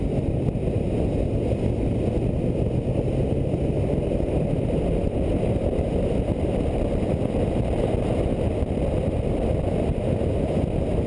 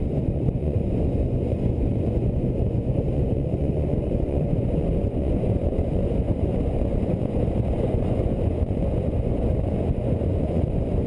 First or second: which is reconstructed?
second